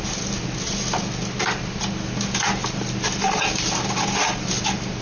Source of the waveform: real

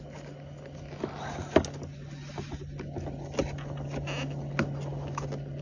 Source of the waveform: real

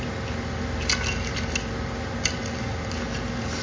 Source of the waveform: real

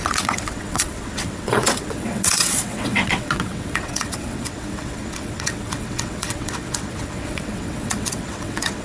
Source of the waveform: fake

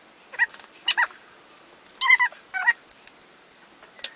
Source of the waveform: real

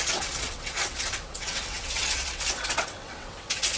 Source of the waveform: fake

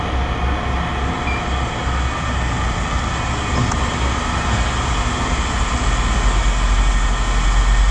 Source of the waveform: real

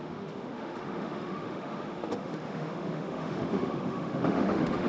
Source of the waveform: fake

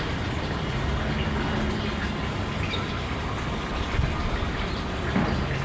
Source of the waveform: real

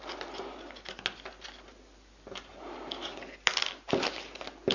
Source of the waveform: real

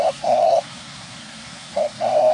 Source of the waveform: fake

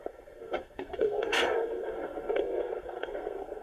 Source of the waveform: fake